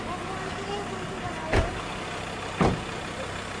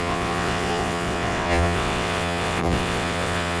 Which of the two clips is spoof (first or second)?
second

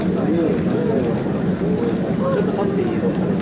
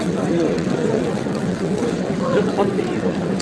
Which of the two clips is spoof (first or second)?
second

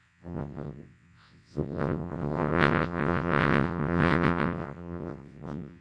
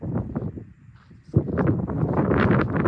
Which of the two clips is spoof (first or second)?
first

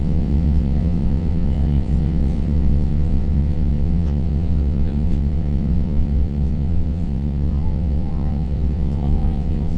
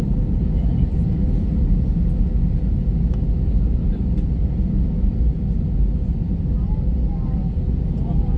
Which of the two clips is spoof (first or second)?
first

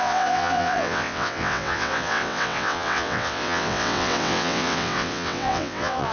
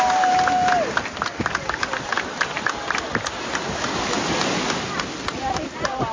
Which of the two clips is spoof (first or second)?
first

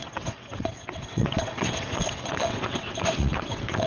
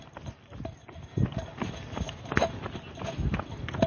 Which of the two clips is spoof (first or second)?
first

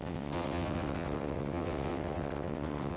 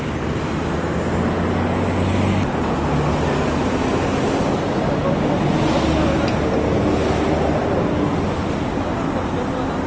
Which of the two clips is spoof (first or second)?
first